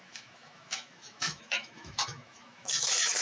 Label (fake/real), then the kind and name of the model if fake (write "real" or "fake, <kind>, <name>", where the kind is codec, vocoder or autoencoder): fake, autoencoder, DAC-VAE